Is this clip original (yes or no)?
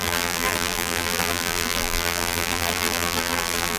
no